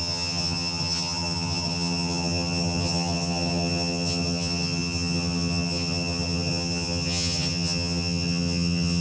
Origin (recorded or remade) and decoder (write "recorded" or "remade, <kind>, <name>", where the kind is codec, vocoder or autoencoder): remade, vocoder, HiFi-GAN